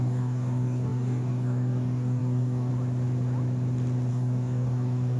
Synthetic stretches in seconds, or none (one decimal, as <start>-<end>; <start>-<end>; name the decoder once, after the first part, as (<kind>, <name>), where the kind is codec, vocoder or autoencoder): 0.0-2.7 (codec, DAC); 4.1-5.2